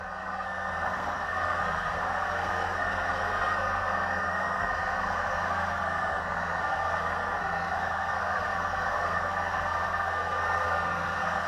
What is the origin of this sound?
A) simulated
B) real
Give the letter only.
A